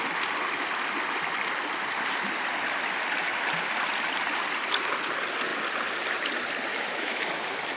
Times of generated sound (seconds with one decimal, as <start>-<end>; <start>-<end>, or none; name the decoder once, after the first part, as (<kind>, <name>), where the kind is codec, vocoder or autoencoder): 6.7-7.2 (autoencoder, DAC-VAE)